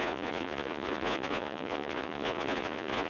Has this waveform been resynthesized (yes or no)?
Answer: yes